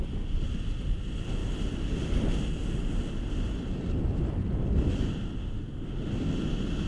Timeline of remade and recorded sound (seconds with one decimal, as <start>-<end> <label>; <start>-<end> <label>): 0.0-5.4 recorded; 5.4-6.1 remade; 6.1-6.9 recorded